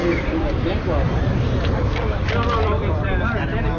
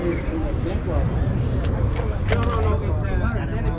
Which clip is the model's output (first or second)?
first